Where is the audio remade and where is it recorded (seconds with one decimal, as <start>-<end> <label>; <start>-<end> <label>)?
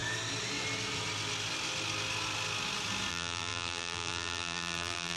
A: 0.0-3.1 recorded; 3.1-5.2 remade